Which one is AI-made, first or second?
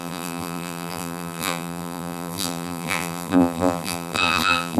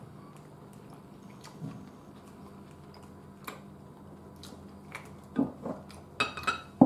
first